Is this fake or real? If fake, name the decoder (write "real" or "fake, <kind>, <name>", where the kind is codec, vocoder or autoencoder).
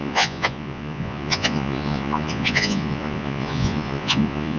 fake, vocoder, Vocos